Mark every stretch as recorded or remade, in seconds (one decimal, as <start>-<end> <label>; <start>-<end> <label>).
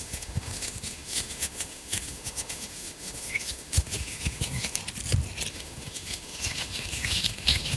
0.0-4.8 remade; 4.8-5.5 recorded; 5.5-7.8 remade